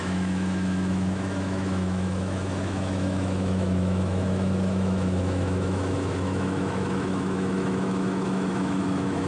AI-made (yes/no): yes